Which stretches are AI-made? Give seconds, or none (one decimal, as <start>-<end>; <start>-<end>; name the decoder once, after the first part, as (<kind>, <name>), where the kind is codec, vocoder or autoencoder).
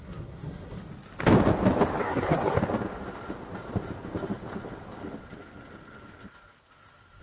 0.0-0.8 (codec, SNAC); 2.0-2.6